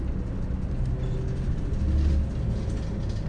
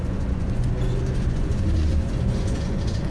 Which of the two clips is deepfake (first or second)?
second